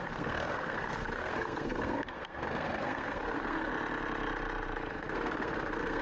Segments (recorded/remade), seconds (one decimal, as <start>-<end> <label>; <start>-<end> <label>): 0.0-3.7 remade; 3.7-4.9 recorded; 4.9-6.0 remade